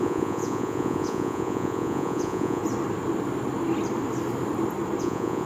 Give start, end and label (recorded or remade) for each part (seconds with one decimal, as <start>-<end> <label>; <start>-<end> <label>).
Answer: 0.0-2.6 remade; 2.6-5.0 recorded; 5.0-5.5 remade